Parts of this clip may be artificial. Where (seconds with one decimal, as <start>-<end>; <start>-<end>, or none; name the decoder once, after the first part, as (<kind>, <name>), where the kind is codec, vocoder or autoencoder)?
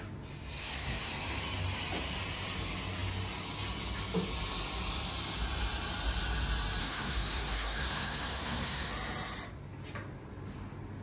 0.6-1.1 (codec, SNAC); 6.8-8.9